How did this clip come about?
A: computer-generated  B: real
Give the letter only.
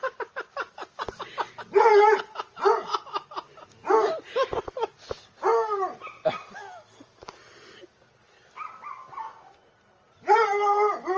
B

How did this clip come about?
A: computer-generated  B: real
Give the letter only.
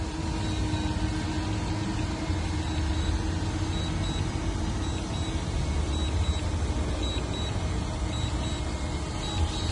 B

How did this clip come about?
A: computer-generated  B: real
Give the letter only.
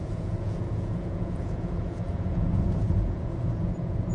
A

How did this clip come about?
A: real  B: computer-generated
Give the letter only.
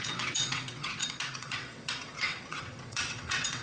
B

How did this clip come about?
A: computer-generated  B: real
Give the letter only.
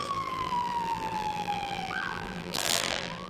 A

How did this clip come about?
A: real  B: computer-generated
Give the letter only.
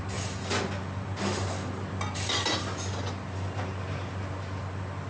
A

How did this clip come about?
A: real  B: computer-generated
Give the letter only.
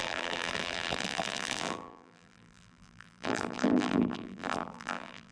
B